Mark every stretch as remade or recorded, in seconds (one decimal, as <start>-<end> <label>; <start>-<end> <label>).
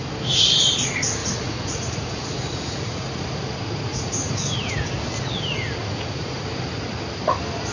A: 0.0-1.2 recorded; 1.2-3.2 remade; 3.2-3.9 recorded; 3.9-4.9 remade; 4.9-5.8 recorded; 5.8-6.4 remade; 6.4-7.7 recorded